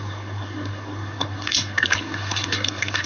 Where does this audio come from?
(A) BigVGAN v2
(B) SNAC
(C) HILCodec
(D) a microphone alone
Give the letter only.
B